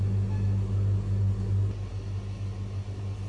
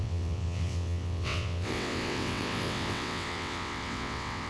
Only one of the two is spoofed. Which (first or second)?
second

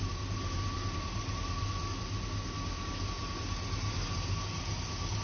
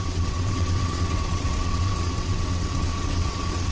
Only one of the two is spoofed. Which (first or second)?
second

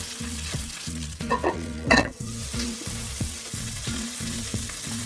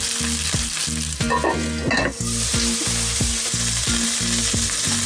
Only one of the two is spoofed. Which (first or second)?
first